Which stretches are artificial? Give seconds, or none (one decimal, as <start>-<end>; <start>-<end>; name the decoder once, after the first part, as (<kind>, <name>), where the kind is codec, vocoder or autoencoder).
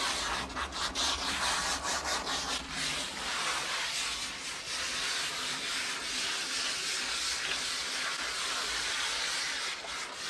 none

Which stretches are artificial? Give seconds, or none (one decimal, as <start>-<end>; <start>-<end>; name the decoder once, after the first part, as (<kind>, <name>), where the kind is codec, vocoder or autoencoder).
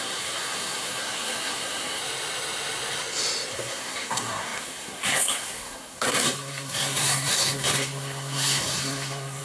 0.0-2.0 (codec, SNAC); 3.5-9.4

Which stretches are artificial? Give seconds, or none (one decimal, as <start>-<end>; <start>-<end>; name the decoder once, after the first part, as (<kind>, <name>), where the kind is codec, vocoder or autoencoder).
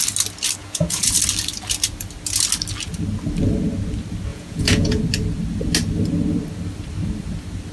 0.6-1.2 (vocoder, Vocos); 4.3-5.0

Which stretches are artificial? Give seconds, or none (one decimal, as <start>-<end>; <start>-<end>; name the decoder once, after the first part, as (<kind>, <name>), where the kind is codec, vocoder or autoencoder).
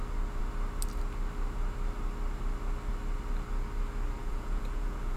4.2-5.2 (vocoder, Vocos)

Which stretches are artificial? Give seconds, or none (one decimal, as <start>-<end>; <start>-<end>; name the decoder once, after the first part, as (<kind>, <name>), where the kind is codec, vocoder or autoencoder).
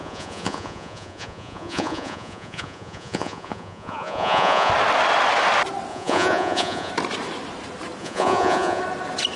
0.0-4.7 (vocoder, Vocos); 5.9-6.9; 8.0-8.8